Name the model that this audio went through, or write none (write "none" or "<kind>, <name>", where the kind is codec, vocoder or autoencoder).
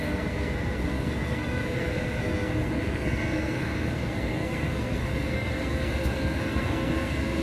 codec, SNAC